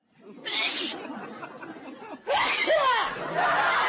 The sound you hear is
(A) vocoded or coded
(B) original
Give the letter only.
B